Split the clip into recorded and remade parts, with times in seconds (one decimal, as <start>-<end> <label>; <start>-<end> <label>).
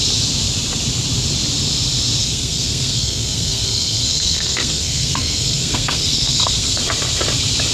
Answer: 0.0-2.2 recorded; 2.2-6.8 remade; 6.8-7.7 recorded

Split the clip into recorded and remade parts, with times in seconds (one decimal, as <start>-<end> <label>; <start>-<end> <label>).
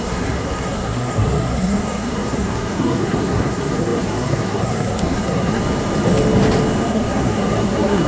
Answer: 0.0-5.6 remade; 5.6-6.9 recorded; 6.9-8.1 remade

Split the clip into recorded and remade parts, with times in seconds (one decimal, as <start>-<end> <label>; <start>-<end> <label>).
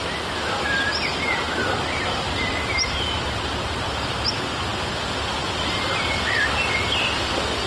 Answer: 0.0-7.7 recorded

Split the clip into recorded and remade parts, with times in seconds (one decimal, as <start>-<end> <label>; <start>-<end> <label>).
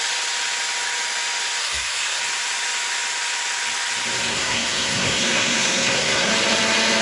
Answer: 0.0-1.6 recorded; 1.6-2.2 remade; 2.2-4.3 recorded; 4.3-6.3 remade; 6.3-7.0 recorded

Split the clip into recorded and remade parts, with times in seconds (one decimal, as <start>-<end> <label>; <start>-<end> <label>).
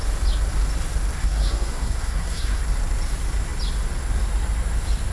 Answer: 0.0-1.2 recorded; 1.2-2.6 remade; 2.6-5.1 recorded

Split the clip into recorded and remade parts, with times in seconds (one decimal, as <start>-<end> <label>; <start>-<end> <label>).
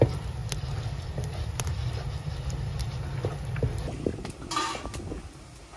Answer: 0.0-5.8 recorded